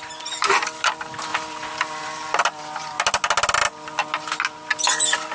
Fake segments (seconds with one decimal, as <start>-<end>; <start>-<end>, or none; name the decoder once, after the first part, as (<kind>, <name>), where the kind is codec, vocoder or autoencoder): none